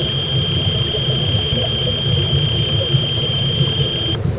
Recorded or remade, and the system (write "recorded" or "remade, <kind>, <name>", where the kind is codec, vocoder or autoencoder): recorded